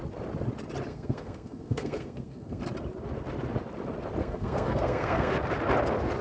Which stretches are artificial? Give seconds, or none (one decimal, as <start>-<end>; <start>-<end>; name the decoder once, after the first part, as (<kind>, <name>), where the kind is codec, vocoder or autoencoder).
0.9-2.6 (codec, SNAC); 4.2-5.3